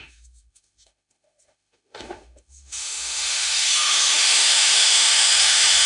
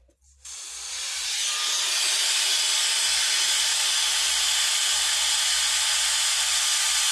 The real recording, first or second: second